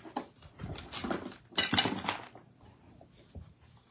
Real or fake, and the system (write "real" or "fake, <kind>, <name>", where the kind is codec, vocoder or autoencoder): real